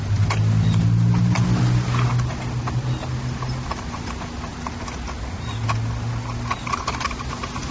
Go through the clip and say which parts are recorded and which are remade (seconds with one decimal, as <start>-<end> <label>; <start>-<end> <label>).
0.0-7.7 recorded